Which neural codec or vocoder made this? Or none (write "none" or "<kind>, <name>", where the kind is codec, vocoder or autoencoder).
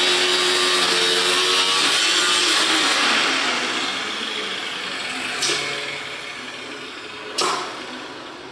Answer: none